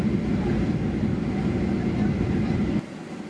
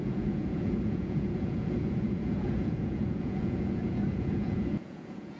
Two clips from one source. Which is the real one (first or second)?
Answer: first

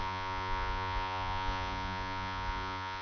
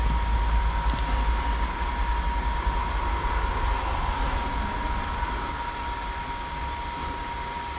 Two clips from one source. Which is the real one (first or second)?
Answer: second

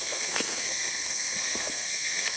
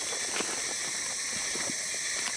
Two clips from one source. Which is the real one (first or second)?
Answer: second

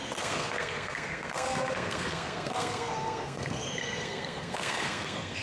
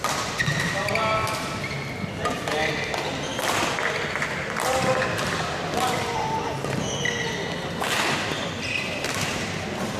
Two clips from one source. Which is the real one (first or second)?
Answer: second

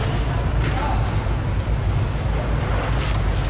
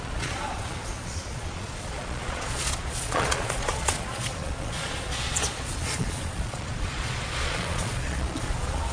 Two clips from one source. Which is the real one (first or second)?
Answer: first